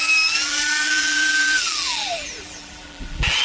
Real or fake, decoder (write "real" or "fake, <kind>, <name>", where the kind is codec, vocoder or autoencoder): fake, vocoder, BigVGAN v2